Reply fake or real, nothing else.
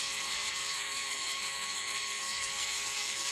fake